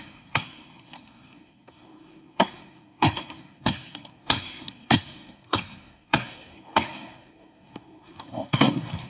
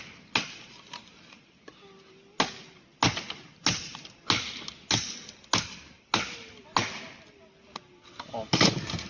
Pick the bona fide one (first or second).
second